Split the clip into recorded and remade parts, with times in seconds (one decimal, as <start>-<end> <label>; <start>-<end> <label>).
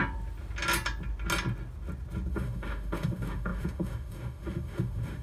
0.0-2.3 recorded; 2.3-5.2 remade